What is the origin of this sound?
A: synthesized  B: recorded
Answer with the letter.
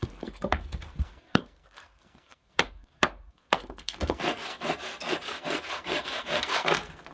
A